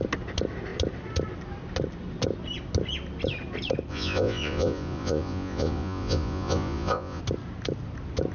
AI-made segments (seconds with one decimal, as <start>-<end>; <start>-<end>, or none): 3.9-7.2